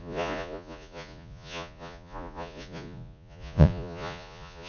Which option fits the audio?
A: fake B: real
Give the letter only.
A